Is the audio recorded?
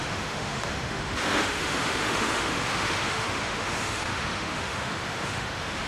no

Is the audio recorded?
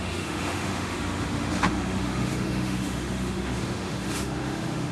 no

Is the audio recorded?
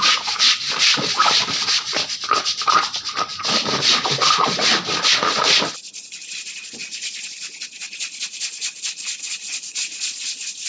yes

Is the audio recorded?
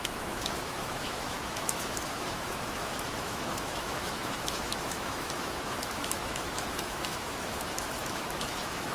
no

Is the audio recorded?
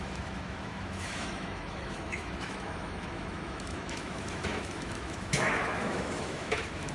no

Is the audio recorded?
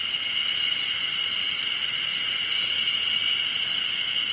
yes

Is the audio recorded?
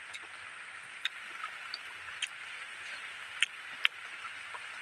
yes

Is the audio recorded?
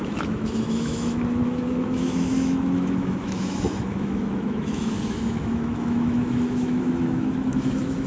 no